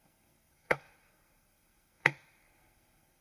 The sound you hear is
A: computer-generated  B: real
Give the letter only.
A